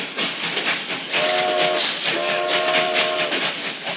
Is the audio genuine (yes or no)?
yes